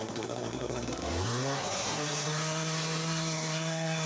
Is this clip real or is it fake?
fake